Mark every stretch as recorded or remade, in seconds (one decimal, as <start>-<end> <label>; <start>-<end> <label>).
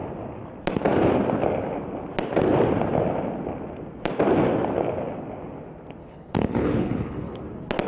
0.0-6.0 recorded; 6.0-7.4 remade; 7.4-7.9 recorded